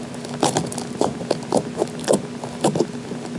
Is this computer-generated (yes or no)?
no